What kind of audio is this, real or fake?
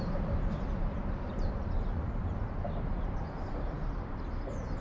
real